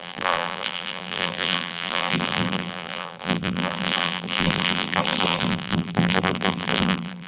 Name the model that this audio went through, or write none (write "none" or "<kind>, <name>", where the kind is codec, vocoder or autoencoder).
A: vocoder, BigVGAN v2